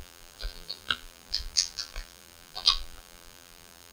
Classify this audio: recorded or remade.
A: remade